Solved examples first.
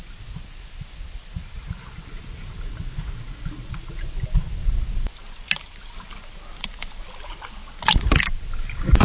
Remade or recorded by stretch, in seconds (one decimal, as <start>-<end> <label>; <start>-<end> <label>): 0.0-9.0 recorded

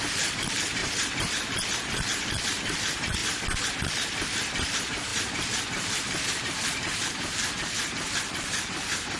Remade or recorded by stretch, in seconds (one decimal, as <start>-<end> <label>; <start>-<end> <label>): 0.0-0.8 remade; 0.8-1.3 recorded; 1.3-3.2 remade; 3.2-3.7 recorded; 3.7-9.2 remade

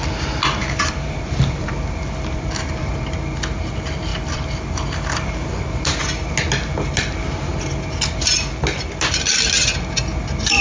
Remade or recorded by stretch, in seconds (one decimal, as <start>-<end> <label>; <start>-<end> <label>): 0.0-0.6 recorded; 0.6-2.9 remade; 2.9-4.1 recorded; 4.1-5.6 remade; 5.6-10.6 recorded